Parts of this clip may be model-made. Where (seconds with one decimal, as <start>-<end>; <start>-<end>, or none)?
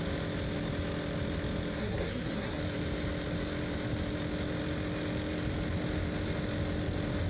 1.8-2.6